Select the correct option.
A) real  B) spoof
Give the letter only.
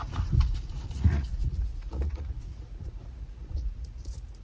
B